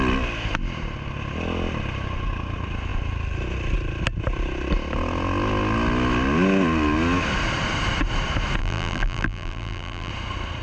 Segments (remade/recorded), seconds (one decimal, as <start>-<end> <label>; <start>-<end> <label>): 0.0-8.6 recorded; 8.6-10.1 remade; 10.1-10.6 recorded